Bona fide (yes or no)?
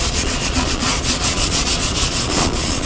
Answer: no